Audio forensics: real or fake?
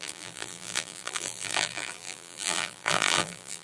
fake